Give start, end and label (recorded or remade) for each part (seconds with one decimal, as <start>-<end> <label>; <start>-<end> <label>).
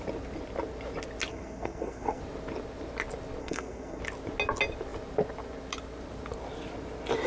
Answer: 0.0-1.3 recorded; 1.3-2.2 remade; 2.2-3.4 recorded; 3.4-4.0 remade; 4.0-7.3 recorded